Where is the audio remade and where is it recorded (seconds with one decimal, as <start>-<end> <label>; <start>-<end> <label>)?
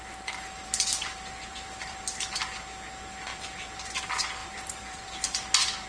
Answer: 0.0-0.6 recorded; 0.6-2.0 remade; 2.0-3.3 recorded; 3.3-4.0 remade; 4.0-4.4 recorded; 4.4-5.9 remade